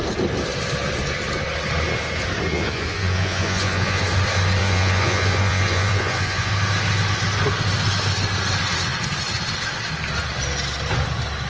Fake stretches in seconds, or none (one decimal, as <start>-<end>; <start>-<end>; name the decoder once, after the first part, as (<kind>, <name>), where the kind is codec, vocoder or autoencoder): 2.5-4.0 (vocoder, Vocos); 4.6-6.5